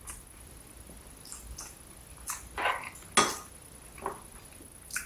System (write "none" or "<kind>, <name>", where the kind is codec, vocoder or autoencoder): none